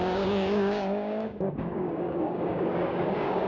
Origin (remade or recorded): remade